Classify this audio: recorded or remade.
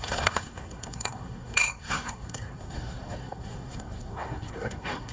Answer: remade